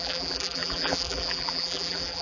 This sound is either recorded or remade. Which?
remade